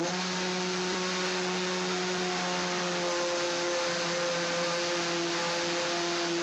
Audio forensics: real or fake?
real